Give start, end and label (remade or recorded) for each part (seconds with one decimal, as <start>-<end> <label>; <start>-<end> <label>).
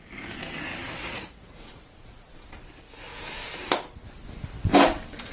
0.0-1.0 recorded; 1.0-2.5 remade; 2.5-5.3 recorded